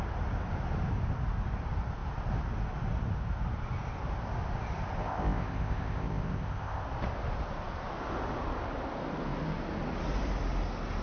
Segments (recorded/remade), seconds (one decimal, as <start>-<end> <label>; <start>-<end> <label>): 0.0-5.0 recorded; 5.0-6.8 remade; 6.8-11.0 recorded